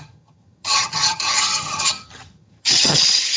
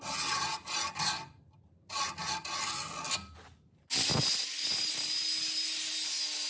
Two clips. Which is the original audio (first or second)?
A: second